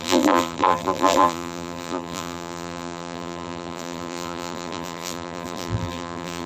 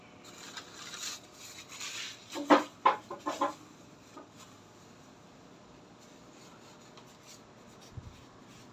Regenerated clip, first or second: first